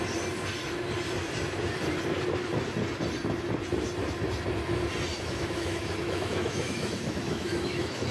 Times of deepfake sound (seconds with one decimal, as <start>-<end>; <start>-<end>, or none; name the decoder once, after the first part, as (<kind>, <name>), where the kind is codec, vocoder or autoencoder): 5.1-8.1 (autoencoder, DAC-VAE)